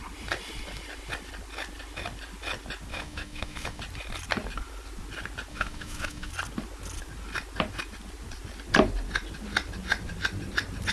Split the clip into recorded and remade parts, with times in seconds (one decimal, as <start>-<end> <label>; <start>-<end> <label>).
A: 0.0-2.9 recorded; 2.9-3.8 remade; 3.8-5.5 recorded; 5.5-6.3 remade; 6.3-10.9 recorded